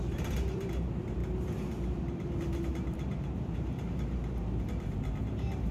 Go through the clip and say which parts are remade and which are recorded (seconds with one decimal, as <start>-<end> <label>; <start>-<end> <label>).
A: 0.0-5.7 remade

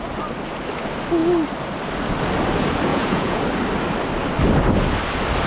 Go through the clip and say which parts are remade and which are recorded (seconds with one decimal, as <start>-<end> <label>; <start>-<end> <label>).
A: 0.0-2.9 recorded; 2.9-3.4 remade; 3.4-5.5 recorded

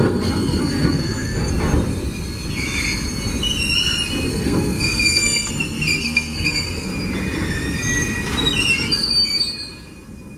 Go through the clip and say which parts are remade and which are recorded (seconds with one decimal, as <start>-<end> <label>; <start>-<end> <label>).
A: 0.0-1.5 remade; 1.5-4.3 recorded; 4.3-5.5 remade; 5.5-6.0 recorded; 6.0-6.9 remade; 6.9-10.4 recorded

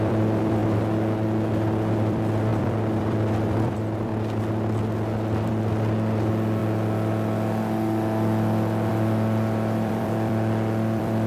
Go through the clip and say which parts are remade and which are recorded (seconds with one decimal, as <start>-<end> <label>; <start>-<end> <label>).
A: 0.0-0.6 remade; 0.6-1.5 recorded; 1.5-4.1 remade; 4.1-5.5 recorded; 5.5-6.6 remade; 6.6-8.9 recorded; 8.9-11.3 remade

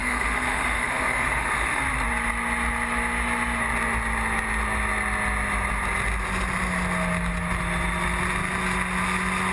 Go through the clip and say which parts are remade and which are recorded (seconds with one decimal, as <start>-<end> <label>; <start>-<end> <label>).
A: 0.0-1.8 remade; 1.8-9.5 recorded

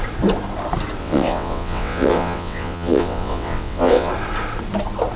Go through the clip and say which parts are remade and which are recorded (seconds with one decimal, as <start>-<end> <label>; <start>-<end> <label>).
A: 0.0-1.0 recorded; 1.0-4.1 remade; 4.1-5.2 recorded

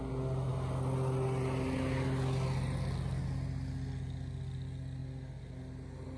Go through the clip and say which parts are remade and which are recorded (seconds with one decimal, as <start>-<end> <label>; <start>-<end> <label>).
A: 0.0-6.2 recorded